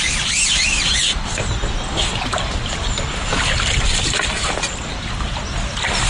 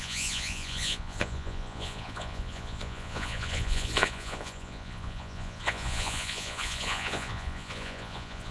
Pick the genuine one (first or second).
first